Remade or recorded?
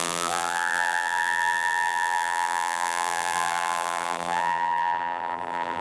remade